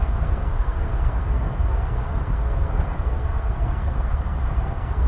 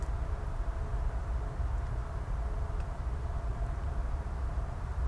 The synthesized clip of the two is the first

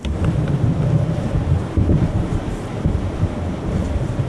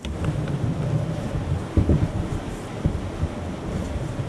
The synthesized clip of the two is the first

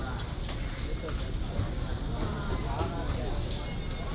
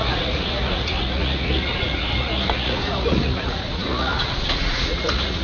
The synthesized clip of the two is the second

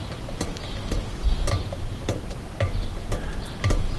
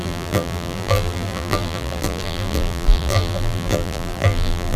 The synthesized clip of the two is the second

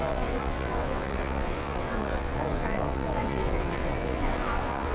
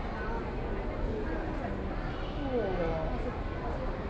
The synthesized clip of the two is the first